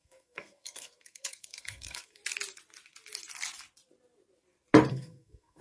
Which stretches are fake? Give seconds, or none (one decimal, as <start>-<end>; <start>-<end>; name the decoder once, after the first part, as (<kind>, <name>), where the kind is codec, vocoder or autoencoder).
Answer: 0.0-2.2 (codec, SNAC); 4.9-5.6